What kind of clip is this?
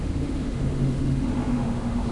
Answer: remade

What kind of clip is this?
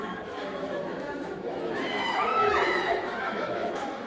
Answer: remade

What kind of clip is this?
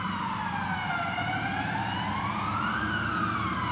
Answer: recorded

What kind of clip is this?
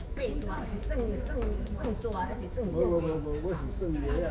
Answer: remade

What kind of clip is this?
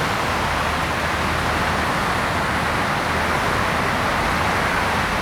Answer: recorded